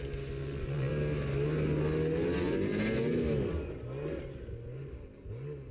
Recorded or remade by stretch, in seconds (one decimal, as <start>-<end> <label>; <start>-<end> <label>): 0.0-0.4 recorded; 0.4-0.9 remade; 0.9-5.7 recorded